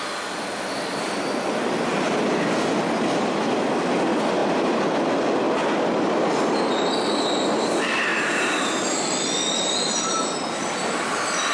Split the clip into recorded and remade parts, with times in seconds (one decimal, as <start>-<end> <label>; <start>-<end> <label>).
0.0-11.5 recorded